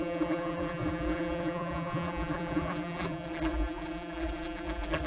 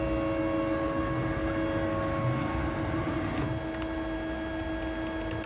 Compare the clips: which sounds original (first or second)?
second